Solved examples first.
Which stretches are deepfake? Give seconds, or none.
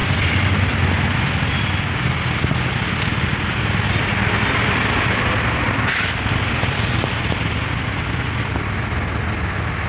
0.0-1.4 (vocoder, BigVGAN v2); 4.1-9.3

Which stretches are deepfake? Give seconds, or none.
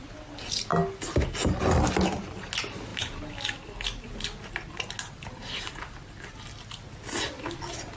none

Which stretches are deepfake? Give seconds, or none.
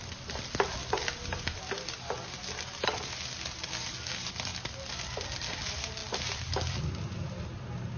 none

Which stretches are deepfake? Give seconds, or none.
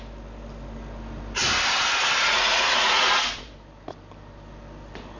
2.2-3.5 (vocoder, Vocos)